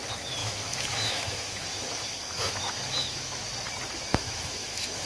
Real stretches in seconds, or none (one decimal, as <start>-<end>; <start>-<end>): 0.0-0.4; 3.5-4.1